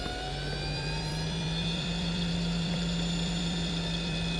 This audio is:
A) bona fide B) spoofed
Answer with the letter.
B